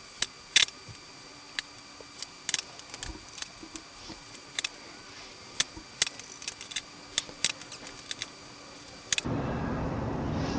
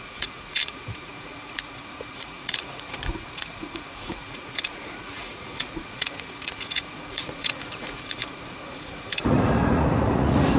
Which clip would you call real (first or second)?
first